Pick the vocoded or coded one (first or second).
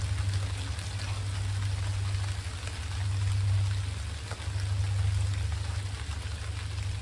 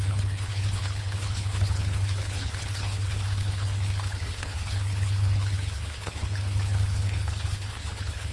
second